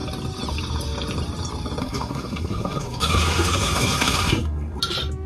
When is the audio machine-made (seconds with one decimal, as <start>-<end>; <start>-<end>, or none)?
1.8-4.8